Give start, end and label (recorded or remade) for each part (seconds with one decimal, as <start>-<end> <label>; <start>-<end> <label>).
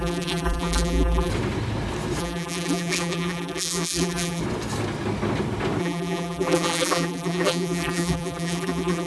0.0-1.3 remade; 1.3-2.2 recorded; 2.2-4.4 remade; 4.4-5.8 recorded; 5.8-9.1 remade